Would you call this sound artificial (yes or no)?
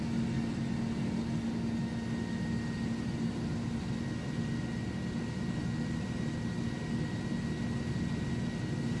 no